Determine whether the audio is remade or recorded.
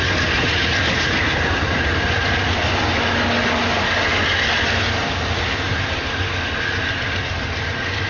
recorded